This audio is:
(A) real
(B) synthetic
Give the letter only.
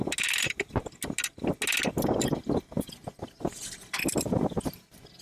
A